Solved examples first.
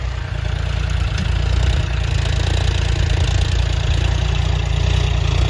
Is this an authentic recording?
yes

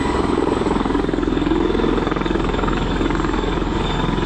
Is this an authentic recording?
no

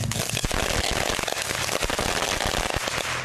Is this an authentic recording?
yes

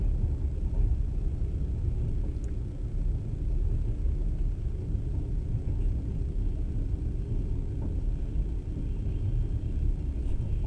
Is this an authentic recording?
yes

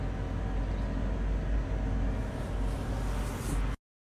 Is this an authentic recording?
yes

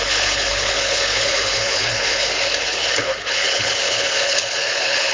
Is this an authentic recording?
no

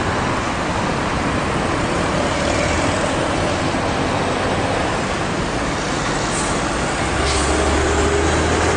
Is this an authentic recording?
yes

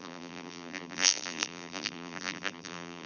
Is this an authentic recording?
no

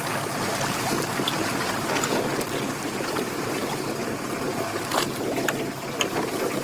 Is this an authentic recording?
no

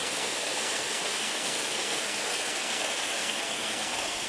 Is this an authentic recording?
no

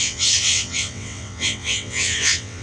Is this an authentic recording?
no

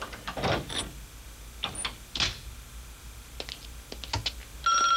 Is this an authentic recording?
yes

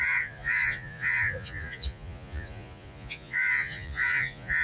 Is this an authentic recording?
no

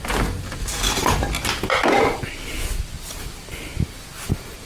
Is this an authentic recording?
yes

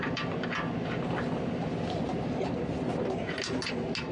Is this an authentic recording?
yes